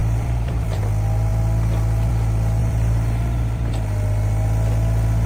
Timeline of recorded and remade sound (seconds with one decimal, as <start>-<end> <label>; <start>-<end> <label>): 0.0-0.8 remade; 0.8-2.6 recorded; 2.6-3.7 remade; 3.7-5.3 recorded